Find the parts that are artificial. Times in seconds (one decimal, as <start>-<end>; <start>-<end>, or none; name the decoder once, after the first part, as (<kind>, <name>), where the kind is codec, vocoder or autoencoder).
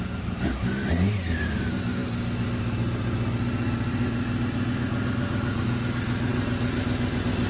none